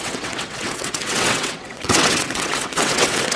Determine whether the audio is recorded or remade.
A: remade